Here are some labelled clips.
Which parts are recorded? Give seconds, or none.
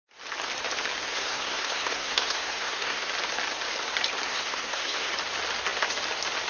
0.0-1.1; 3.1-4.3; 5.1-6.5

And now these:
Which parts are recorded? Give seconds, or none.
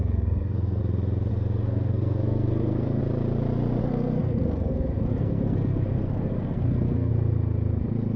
0.8-1.3; 3.0-3.8; 7.1-8.2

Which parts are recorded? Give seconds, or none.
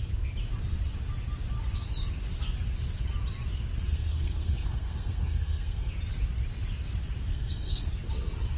0.0-3.9; 5.9-7.3; 7.9-8.6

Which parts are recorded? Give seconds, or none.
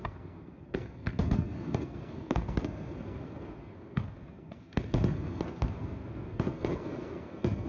none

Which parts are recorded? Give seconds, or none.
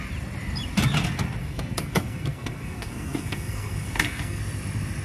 0.0-1.4; 4.4-5.0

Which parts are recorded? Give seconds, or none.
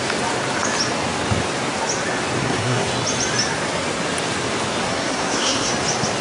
0.0-2.4; 2.9-4.8; 5.7-6.2